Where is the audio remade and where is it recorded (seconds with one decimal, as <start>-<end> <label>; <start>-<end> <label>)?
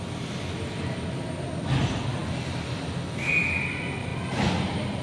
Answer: 0.0-5.0 recorded